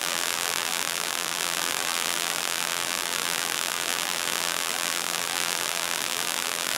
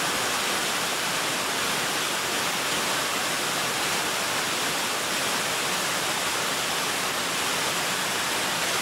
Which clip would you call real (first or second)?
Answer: second